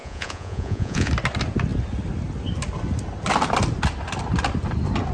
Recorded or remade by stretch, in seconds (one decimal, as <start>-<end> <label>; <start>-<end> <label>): 0.0-1.1 remade; 1.1-5.1 recorded